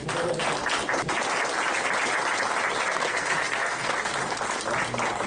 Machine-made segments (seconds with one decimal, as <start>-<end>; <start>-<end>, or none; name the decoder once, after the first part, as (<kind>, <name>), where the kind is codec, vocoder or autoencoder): 2.9-4.1 (codec, SNAC)